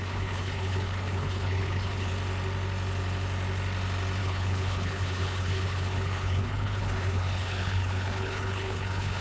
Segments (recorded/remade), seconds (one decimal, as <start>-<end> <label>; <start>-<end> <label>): 0.0-2.1 remade; 2.1-4.2 recorded; 4.2-9.2 remade